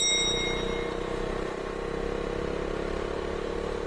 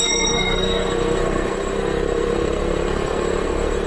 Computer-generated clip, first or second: second